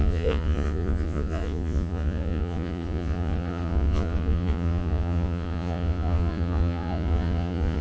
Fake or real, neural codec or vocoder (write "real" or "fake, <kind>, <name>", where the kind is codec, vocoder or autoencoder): fake, vocoder, Vocos